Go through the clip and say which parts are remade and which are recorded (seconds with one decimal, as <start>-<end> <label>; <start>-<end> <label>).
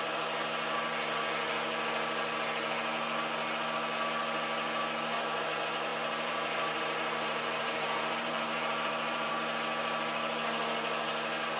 0.0-5.9 recorded; 5.9-9.3 remade; 9.3-11.6 recorded